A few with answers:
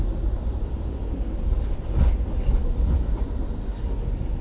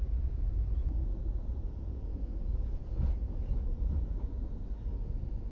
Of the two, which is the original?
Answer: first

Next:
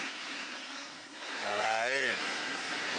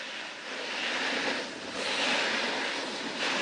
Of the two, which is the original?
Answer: second